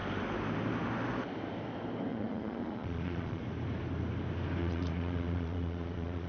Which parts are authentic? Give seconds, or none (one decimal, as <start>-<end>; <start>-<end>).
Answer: 0.0-2.1; 3.4-4.6